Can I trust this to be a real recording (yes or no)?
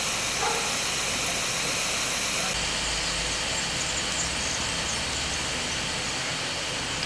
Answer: yes